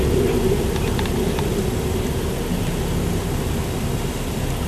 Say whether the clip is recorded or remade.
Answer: recorded